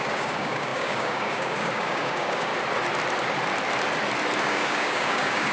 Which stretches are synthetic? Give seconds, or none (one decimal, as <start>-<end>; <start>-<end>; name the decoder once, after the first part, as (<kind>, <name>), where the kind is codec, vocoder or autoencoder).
0.0-2.5 (codec, DAC); 4.4-5.5